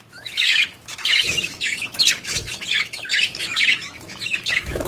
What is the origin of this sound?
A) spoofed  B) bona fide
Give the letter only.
A